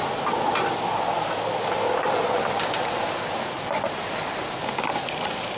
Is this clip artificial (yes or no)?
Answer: no